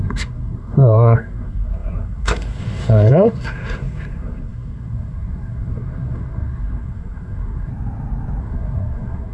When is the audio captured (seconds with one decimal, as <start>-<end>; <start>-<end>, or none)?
7.7-8.4